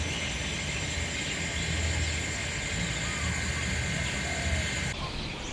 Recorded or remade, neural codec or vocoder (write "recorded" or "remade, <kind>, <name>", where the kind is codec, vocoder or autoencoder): recorded